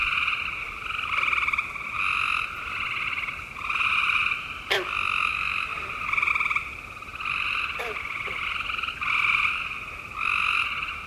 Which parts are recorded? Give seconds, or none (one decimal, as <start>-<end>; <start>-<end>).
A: 0.0-4.2; 5.3-5.7; 6.3-11.1